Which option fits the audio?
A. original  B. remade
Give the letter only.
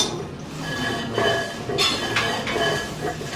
A